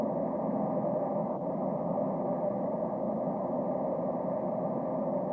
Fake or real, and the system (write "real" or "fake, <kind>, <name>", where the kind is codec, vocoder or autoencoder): real